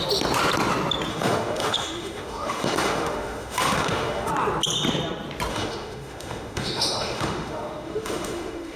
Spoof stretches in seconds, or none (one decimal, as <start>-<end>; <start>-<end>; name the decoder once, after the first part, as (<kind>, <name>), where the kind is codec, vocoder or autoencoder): 1.1-4.3 (autoencoder, DAC-VAE); 5.5-8.8